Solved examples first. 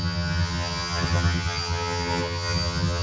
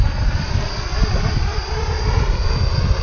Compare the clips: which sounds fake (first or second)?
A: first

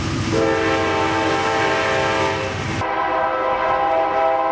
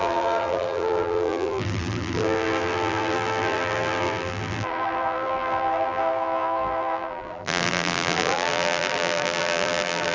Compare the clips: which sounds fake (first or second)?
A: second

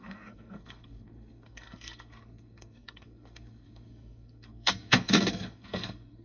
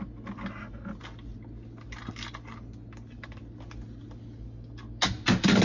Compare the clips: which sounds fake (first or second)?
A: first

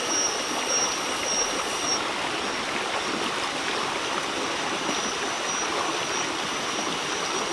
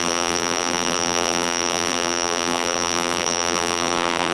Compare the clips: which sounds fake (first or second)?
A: second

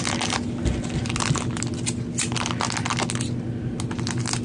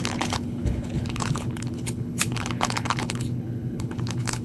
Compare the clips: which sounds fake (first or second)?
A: second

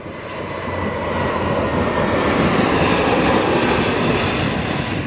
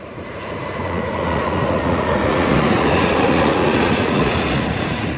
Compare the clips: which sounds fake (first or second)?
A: second